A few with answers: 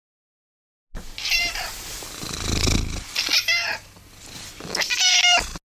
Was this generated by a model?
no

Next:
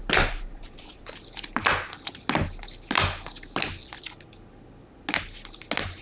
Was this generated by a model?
no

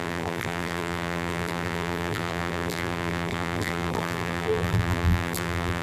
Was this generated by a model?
yes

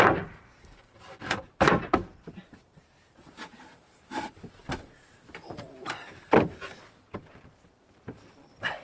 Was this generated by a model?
yes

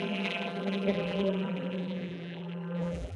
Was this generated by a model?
yes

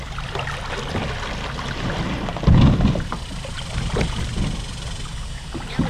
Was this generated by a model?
no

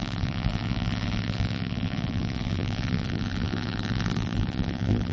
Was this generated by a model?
yes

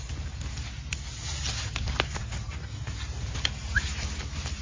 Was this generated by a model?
no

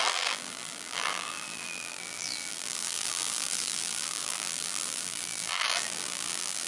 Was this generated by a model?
yes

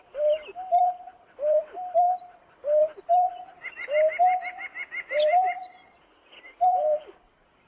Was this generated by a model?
yes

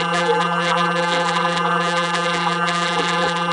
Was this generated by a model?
yes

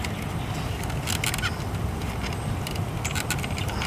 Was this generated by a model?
no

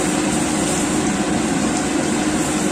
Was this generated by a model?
no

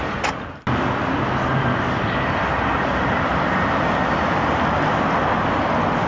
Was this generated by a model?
no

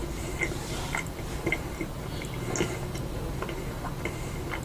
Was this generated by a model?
no